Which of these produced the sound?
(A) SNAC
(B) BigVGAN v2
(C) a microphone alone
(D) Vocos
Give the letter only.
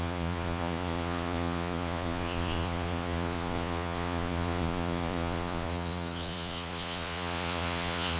D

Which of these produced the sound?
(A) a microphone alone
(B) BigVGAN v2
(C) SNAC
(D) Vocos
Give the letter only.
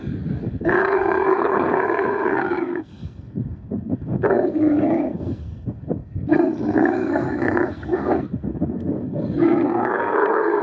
C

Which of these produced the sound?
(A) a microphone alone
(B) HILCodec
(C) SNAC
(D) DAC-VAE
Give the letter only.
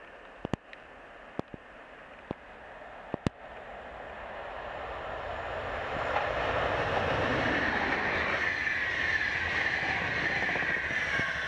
A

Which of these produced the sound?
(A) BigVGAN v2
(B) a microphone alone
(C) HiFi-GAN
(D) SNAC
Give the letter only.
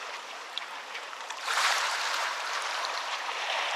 A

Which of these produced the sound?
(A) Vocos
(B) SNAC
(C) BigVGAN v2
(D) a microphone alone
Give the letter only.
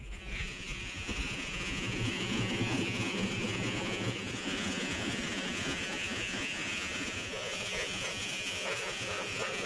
A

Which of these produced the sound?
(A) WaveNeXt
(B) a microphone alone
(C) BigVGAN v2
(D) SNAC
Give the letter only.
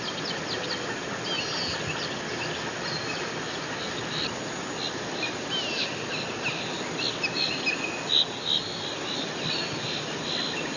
B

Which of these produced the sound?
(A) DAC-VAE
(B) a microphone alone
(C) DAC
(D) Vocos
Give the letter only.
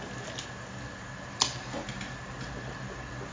B